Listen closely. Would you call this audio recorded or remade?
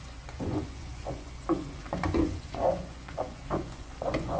remade